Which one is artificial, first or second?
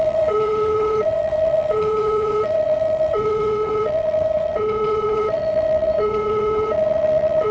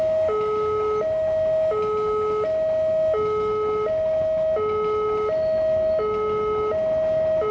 first